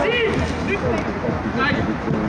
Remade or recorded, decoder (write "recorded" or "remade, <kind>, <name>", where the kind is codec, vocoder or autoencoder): recorded